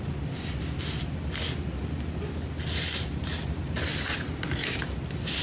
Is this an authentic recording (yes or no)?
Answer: yes